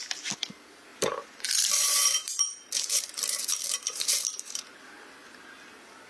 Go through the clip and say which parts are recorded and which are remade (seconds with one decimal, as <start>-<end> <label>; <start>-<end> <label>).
0.0-0.9 recorded; 0.9-4.6 remade; 4.6-6.1 recorded